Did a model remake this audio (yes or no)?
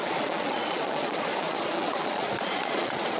yes